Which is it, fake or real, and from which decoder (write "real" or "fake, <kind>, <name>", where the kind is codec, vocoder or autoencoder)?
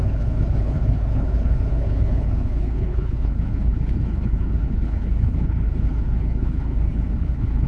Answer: fake, codec, HILCodec